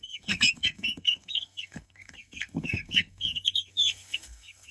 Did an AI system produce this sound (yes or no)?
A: yes